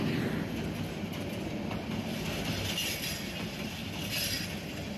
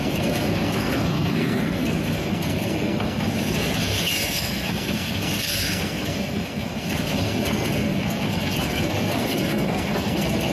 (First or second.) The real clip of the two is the first